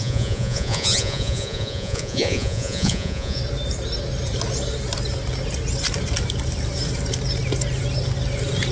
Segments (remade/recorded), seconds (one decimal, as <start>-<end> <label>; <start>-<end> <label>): 0.0-3.4 remade; 3.4-8.7 recorded